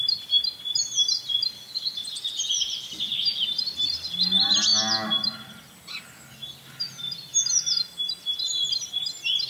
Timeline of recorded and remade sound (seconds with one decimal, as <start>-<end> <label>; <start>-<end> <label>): 0.0-9.5 recorded